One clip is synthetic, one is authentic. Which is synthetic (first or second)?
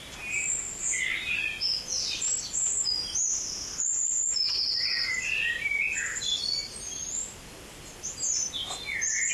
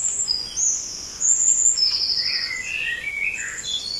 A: second